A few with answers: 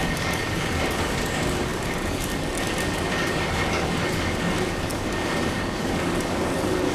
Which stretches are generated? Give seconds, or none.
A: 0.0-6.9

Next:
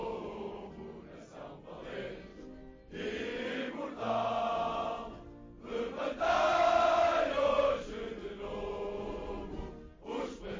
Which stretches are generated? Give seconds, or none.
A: 0.0-0.7

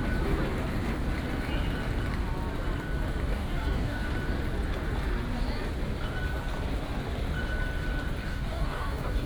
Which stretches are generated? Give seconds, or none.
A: 3.3-4.1; 8.2-9.3

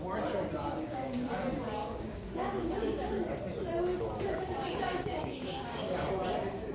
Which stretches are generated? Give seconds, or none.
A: 0.6-1.2; 1.8-3.1; 3.9-6.1

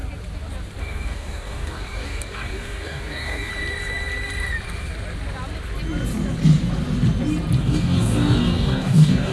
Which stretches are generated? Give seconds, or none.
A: 0.8-3.5; 7.6-9.3

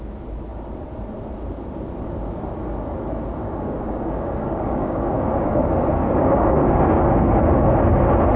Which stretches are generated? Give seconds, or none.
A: 3.4-7.0

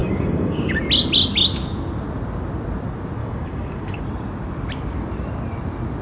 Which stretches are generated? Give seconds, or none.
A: 0.0-0.8; 3.2-4.0